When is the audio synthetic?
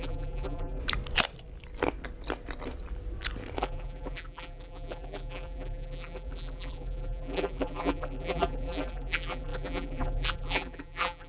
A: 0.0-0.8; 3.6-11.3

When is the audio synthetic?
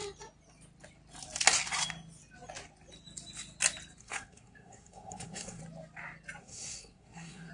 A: 4.0-5.6; 6.4-7.5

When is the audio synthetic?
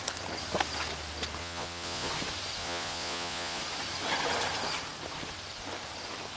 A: 1.4-2.1; 2.6-3.6